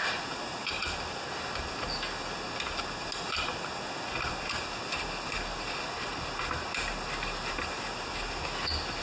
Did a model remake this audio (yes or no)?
no